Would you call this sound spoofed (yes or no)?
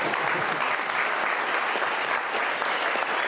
no